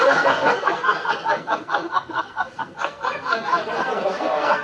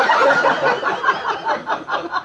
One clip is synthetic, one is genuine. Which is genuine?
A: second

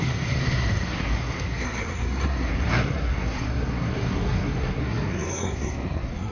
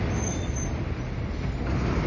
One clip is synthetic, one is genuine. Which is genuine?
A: second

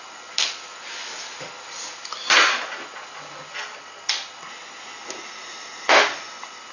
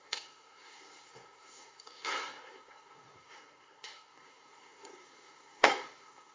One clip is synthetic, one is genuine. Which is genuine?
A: first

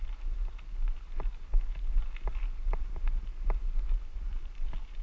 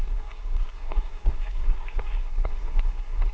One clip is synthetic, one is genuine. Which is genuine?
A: first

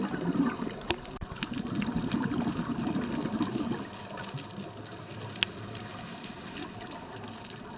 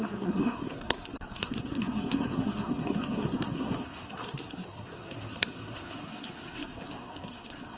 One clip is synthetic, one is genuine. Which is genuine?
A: first